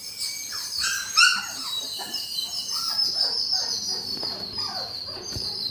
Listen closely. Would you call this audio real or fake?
fake